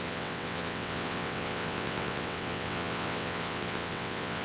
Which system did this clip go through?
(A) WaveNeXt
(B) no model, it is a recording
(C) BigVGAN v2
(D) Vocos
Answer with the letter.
A